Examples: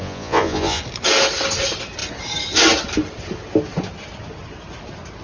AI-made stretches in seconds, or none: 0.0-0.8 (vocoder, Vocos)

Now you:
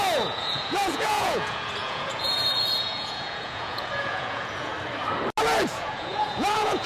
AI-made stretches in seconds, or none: 0.0-4.7 (vocoder, Vocos); 5.7-6.9

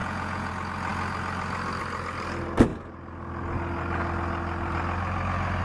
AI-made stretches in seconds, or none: 0.0-0.5 (vocoder, Vocos)

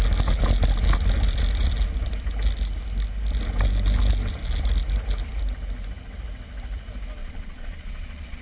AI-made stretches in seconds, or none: 7.2-8.4 (vocoder, Vocos)

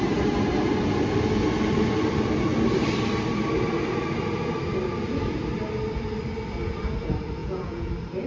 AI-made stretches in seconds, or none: 7.4-7.9 (vocoder, Vocos)

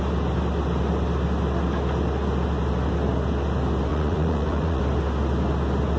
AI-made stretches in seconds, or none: 3.9-4.8 (vocoder, Vocos)

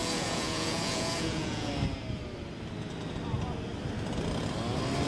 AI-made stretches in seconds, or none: 0.0-1.7 (vocoder, Vocos)